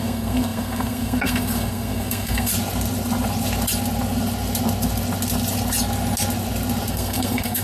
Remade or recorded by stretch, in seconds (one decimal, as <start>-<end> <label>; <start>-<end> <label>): 0.0-2.5 remade; 2.5-6.9 recorded; 6.9-7.6 remade